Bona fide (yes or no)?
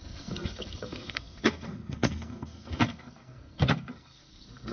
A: no